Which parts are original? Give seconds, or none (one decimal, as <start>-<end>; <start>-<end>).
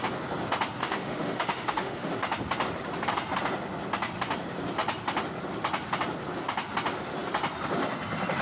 0.0-0.8; 2.1-8.4